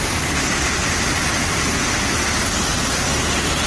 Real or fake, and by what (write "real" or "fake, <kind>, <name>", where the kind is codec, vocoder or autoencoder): real